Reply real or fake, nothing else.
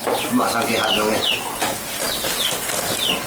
real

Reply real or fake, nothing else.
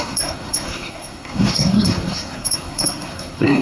fake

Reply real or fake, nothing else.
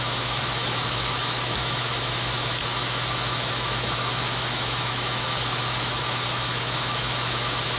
fake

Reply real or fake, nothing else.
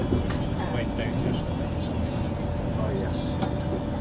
real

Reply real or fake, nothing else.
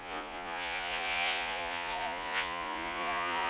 fake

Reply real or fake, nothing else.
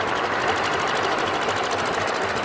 real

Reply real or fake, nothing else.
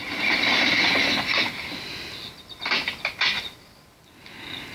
real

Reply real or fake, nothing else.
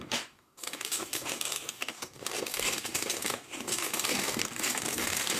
fake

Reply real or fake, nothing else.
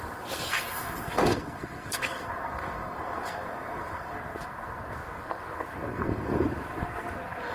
fake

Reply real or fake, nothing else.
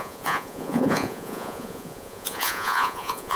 fake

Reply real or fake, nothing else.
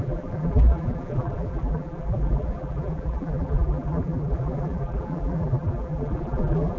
fake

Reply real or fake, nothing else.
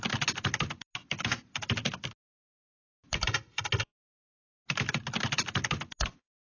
real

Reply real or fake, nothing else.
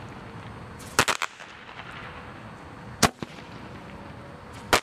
real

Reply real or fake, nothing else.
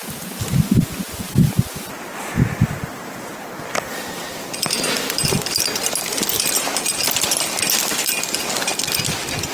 real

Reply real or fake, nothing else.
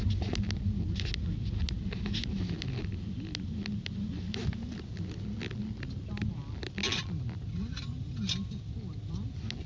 real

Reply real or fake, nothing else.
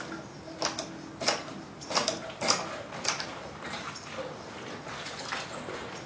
real